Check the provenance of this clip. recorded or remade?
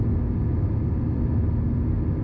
recorded